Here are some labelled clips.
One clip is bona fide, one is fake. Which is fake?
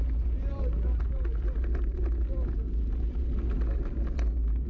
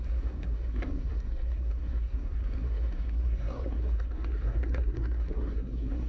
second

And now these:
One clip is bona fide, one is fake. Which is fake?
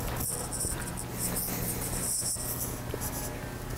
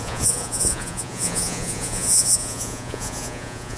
second